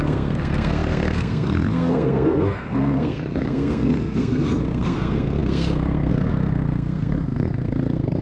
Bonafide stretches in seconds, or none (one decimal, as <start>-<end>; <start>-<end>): none